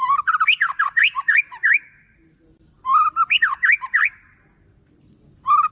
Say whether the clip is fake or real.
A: real